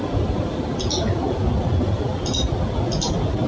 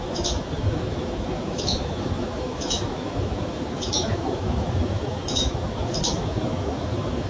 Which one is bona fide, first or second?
first